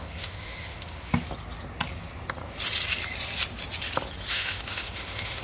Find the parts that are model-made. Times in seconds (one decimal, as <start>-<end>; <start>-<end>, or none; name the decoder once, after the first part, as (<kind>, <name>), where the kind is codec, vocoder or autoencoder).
0.0-1.1 (autoencoder, DAC-VAE); 4.3-5.4